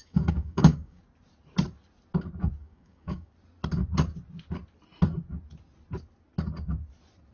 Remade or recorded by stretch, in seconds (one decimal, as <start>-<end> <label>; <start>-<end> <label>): 0.0-1.0 remade; 1.0-2.6 recorded; 2.6-3.3 remade; 3.3-7.3 recorded